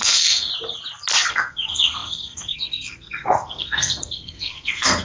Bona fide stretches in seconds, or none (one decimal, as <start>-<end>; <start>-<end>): 0.5-1.3